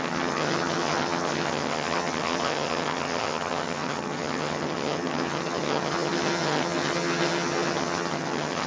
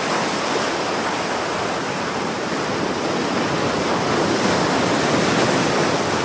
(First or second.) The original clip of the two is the second